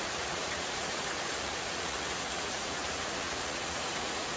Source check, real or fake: fake